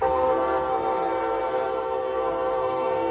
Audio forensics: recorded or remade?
remade